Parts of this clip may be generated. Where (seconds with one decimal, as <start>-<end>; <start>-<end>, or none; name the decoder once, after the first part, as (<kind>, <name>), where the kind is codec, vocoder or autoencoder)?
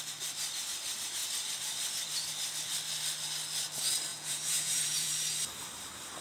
4.1-5.1 (vocoder, Vocos)